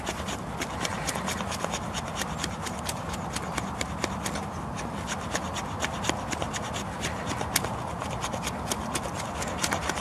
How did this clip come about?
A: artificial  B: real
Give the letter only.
B